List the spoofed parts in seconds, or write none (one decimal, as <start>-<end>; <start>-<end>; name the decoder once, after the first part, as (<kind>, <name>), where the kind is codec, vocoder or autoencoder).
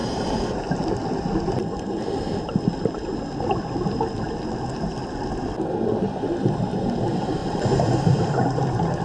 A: 7.4-8.4 (vocoder, BigVGAN v2)